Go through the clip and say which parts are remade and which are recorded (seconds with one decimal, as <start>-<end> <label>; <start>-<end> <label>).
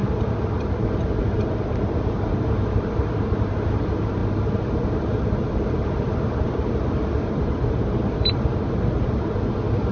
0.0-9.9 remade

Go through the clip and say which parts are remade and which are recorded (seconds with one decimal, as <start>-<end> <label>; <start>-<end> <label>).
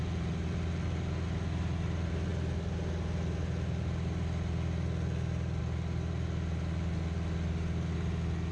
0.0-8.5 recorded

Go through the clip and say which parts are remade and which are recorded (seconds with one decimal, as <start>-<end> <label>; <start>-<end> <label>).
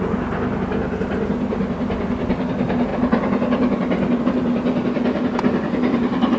0.0-6.4 recorded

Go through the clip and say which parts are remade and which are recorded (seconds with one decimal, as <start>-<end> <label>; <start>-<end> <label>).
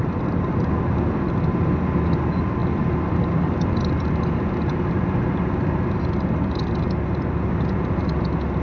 0.0-8.6 recorded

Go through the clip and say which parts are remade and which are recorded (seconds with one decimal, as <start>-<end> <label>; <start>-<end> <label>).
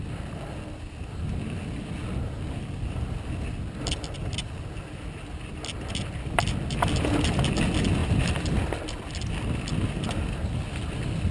0.0-11.3 recorded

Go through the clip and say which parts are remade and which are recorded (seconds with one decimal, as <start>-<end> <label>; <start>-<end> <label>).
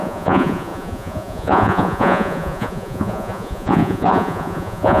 0.0-5.0 remade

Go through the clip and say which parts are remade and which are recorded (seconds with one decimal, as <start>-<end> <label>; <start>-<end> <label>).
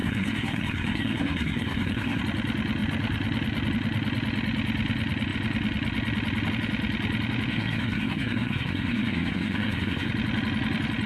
0.0-2.2 remade; 2.2-7.5 recorded; 7.5-10.1 remade; 10.1-11.1 recorded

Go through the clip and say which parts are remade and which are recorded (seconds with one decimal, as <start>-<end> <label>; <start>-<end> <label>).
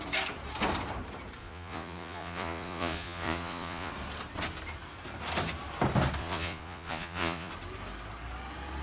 0.0-1.4 recorded; 1.4-3.9 remade; 3.9-6.2 recorded; 6.2-7.5 remade; 7.5-8.8 recorded